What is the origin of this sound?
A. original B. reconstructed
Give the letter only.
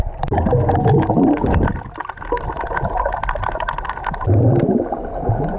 A